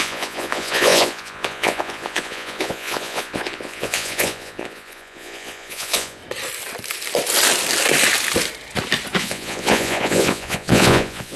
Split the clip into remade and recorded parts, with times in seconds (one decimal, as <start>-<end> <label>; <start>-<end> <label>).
0.0-6.2 remade; 6.2-9.2 recorded; 9.2-11.4 remade